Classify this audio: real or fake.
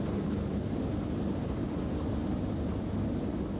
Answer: real